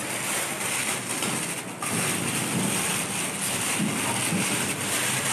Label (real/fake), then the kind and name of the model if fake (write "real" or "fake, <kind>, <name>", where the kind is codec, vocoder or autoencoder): real